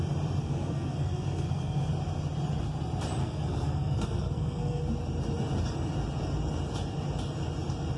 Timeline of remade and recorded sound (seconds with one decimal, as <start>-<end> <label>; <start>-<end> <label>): 0.0-0.4 recorded; 0.4-1.9 remade; 1.9-3.2 recorded; 3.2-4.8 remade; 4.8-8.0 recorded